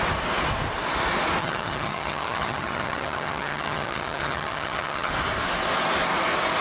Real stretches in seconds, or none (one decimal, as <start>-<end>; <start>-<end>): 0.0-1.4; 5.1-6.6